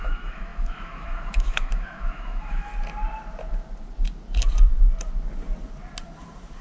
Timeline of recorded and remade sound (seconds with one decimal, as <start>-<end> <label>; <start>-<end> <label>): 0.0-2.7 remade; 2.7-6.6 recorded